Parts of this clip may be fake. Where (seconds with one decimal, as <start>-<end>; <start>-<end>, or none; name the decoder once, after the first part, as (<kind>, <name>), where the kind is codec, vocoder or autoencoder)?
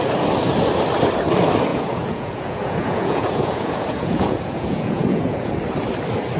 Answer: 1.7-5.5 (vocoder, Vocos)